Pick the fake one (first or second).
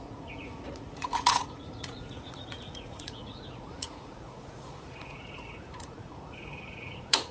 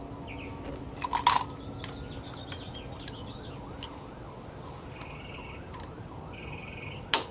first